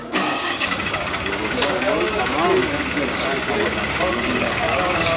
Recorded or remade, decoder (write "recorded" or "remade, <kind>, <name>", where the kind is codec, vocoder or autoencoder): remade, codec, DAC